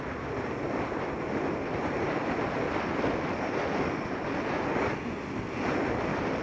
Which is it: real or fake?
real